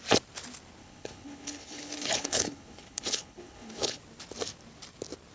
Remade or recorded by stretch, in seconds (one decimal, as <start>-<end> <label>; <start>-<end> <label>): 0.0-0.8 recorded; 0.8-4.0 remade; 4.0-5.3 recorded